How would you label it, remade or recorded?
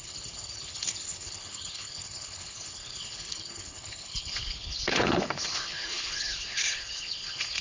remade